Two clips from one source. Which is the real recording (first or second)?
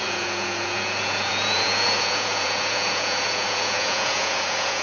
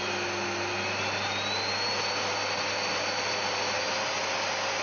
second